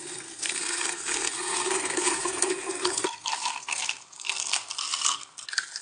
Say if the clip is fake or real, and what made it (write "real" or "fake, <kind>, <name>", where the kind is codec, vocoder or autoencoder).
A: fake, codec, SNAC